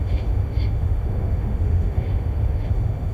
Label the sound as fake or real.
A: fake